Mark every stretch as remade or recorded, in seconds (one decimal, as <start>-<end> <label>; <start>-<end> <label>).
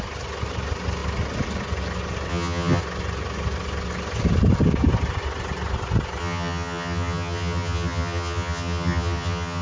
0.0-2.3 recorded; 2.3-2.8 remade; 2.8-6.2 recorded; 6.2-9.6 remade